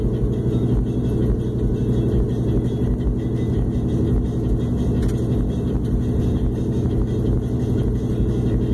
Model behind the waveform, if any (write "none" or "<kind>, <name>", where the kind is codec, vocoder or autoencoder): none